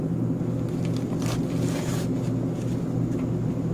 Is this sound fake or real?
real